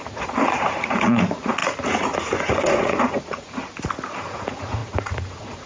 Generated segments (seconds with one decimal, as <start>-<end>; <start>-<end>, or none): 0.0-3.6; 4.2-5.7